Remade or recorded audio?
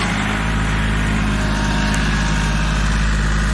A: recorded